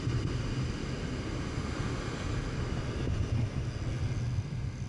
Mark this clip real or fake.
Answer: real